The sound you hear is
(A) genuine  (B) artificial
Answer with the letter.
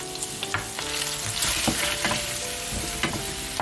B